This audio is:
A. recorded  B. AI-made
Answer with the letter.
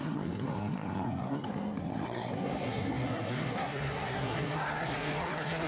B